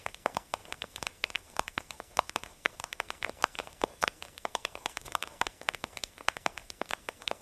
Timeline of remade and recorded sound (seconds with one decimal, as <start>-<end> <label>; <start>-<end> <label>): 0.0-7.4 remade